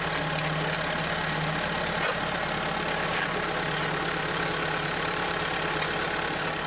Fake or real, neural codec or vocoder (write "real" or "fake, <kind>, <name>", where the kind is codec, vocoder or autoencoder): real